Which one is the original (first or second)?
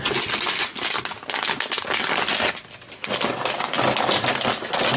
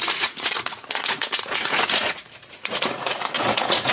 first